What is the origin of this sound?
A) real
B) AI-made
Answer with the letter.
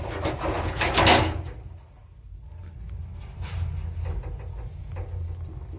A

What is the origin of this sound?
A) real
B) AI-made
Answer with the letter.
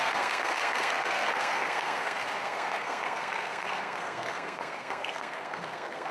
B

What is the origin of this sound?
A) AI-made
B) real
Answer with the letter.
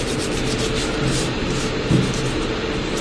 B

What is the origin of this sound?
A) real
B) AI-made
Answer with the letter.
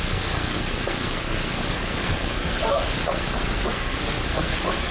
B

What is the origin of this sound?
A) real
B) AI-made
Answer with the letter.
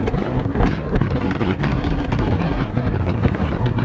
B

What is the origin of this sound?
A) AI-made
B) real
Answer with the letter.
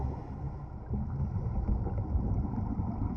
B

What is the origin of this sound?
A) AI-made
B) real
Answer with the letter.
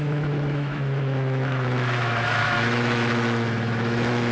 A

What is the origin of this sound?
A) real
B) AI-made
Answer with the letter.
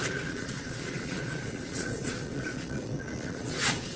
B